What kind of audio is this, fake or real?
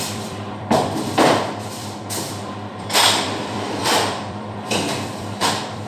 fake